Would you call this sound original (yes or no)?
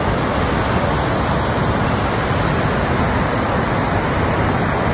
yes